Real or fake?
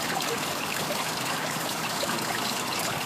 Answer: fake